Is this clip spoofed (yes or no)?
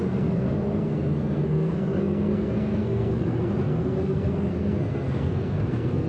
yes